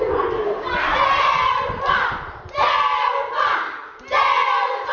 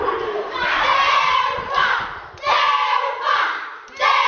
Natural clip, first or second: first